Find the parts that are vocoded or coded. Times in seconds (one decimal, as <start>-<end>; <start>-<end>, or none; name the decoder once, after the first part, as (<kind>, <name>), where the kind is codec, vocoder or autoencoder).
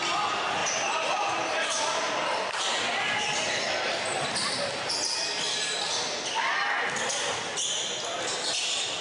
0.6-2.6 (vocoder, BigVGAN v2)